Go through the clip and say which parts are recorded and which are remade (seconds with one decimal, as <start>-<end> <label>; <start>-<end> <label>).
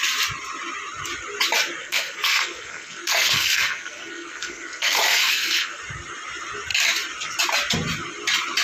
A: 0.0-1.8 recorded; 1.8-5.8 remade; 5.8-8.6 recorded